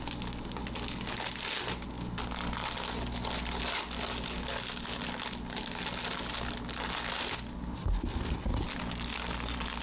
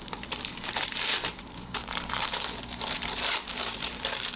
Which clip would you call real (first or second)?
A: first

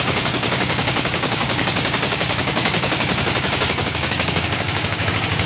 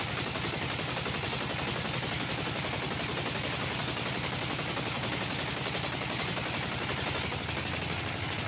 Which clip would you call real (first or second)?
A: second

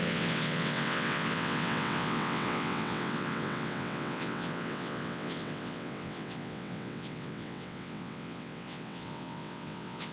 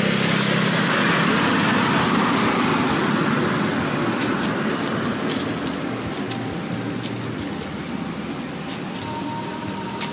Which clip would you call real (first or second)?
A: second